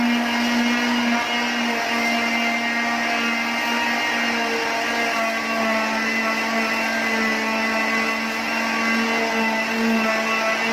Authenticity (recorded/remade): recorded